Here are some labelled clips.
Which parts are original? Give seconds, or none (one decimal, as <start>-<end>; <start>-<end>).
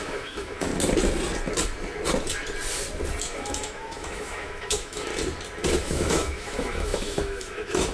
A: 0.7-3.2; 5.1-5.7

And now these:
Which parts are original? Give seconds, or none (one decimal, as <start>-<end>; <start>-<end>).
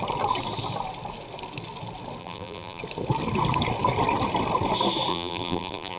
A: 0.0-2.2; 2.8-5.1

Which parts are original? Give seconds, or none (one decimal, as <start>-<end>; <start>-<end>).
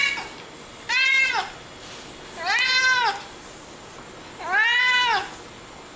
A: 0.0-6.0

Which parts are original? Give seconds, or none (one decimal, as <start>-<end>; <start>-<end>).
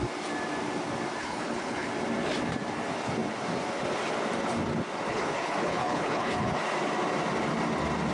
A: 0.0-1.2; 1.9-5.1; 6.6-8.1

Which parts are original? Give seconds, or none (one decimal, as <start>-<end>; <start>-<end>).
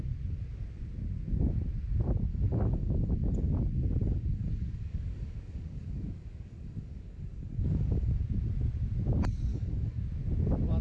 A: 0.0-2.3; 3.1-4.0; 8.2-9.5; 10.0-10.8